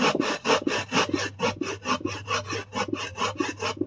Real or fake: real